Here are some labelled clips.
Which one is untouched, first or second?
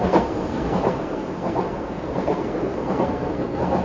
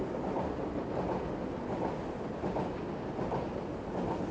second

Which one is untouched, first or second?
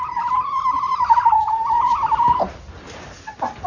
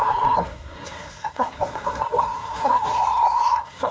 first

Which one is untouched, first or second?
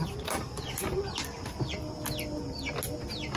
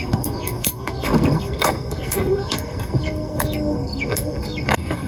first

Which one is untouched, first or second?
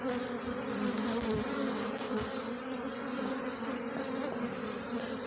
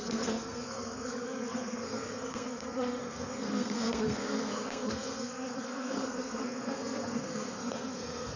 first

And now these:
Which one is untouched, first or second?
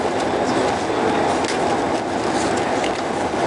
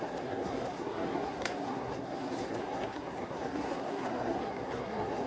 first